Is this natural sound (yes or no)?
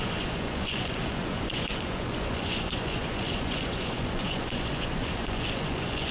no